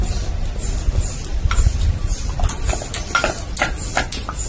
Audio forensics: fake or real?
real